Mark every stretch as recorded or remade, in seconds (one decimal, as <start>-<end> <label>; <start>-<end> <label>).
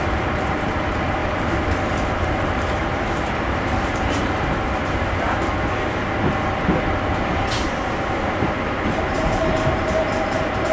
0.0-5.5 remade; 5.5-9.0 recorded; 9.0-10.7 remade